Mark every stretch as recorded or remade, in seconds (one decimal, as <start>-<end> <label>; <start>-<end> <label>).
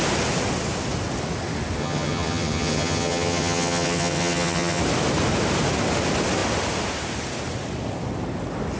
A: 0.0-1.8 recorded; 1.8-4.8 remade; 4.8-8.8 recorded